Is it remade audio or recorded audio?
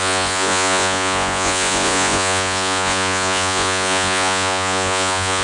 remade